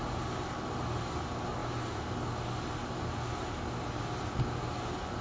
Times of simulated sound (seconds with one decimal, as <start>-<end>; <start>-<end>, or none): 0.0-5.2